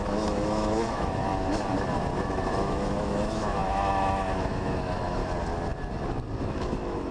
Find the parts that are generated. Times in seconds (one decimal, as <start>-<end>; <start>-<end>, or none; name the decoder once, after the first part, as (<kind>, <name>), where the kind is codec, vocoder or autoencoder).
0.0-1.3 (autoencoder, DAC-VAE); 2.2-5.2; 6.4-7.1